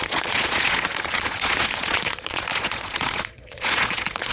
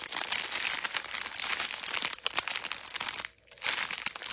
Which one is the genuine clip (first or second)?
second